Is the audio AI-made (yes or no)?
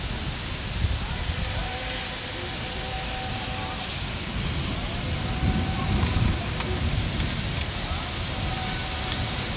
no